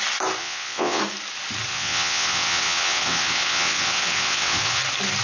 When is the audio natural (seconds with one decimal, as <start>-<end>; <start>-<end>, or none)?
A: 0.0-0.4; 1.0-1.7; 4.8-5.2